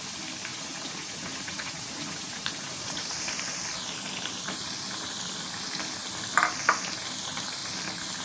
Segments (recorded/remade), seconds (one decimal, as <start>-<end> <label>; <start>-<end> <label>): 0.0-0.5 recorded; 0.5-3.2 remade; 3.2-8.2 recorded